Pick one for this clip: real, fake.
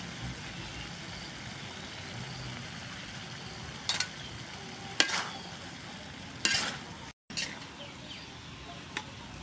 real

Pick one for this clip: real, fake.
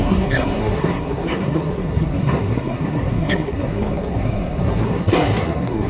fake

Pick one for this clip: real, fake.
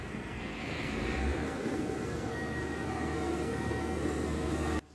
fake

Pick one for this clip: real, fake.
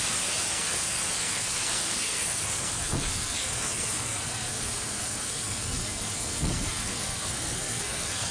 fake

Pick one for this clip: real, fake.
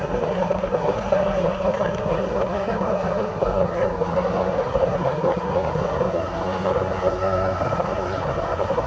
fake